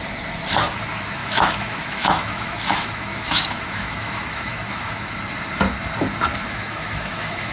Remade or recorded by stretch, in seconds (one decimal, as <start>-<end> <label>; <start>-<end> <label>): 0.0-1.2 recorded; 1.2-5.2 remade; 5.2-6.4 recorded; 6.4-7.5 remade